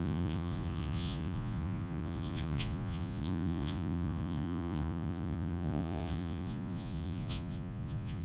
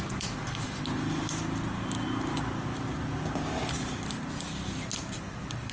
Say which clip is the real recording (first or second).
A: second